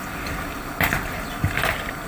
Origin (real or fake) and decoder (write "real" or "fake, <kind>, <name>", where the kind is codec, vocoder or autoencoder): real